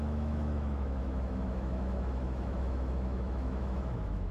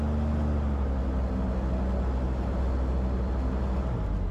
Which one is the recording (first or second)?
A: second